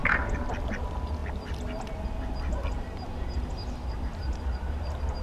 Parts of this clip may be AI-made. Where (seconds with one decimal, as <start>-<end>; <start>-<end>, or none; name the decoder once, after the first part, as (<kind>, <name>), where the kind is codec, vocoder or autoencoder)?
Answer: 4.1-5.2 (vocoder, BigVGAN v2)